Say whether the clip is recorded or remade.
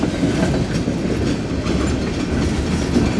recorded